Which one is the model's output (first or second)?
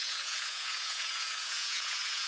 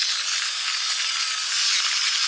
first